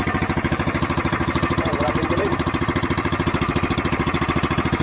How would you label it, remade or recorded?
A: remade